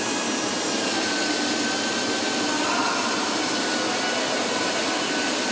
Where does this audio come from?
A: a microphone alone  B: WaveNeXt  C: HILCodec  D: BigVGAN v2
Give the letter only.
A